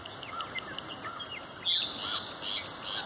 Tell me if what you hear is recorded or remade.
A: recorded